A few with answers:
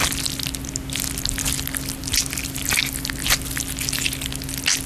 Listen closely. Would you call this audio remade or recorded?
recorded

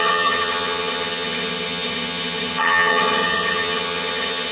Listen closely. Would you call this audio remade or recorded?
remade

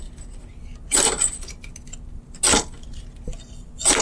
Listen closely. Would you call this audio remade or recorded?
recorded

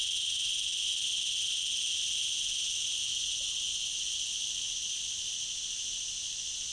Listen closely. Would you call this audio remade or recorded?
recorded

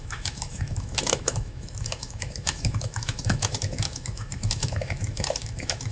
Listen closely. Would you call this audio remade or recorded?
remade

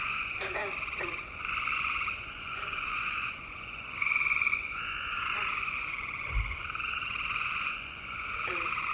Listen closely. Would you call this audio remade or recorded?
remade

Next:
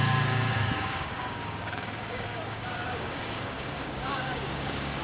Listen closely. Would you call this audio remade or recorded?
remade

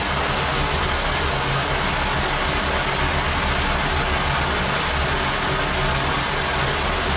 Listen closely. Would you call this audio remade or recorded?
recorded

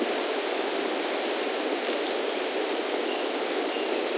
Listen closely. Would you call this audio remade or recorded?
recorded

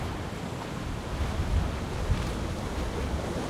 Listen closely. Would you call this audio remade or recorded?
recorded